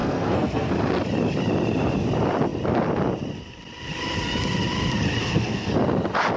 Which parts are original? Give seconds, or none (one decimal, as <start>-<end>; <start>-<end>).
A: 0.7-5.2; 5.7-6.4